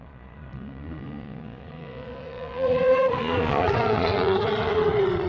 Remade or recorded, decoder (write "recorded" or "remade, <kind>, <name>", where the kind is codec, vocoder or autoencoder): remade, vocoder, Vocos